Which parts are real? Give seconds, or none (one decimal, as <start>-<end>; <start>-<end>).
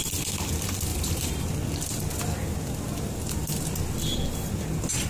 0.0-0.9; 1.4-5.1